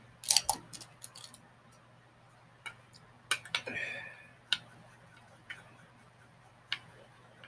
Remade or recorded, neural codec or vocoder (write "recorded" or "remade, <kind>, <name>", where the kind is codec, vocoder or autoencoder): recorded